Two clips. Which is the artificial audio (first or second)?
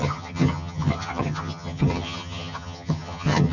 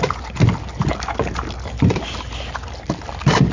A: first